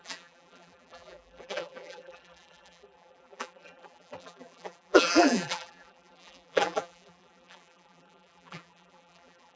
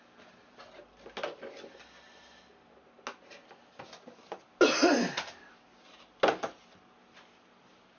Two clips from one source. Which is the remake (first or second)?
first